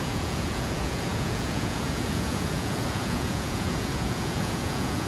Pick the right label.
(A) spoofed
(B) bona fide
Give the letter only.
A